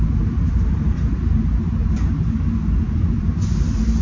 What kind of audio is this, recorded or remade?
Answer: remade